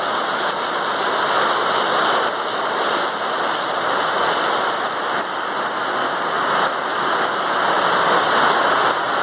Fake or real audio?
real